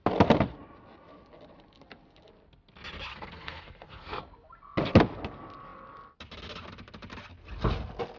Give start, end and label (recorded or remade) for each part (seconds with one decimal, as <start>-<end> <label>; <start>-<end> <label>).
0.0-3.1 recorded; 3.1-4.2 remade; 4.2-8.2 recorded